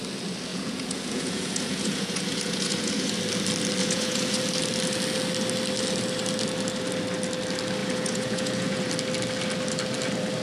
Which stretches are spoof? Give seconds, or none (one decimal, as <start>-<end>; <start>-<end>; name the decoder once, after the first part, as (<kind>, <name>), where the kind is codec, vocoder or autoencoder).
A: 0.5-3.1 (vocoder, Vocos); 3.8-4.4; 7.8-8.9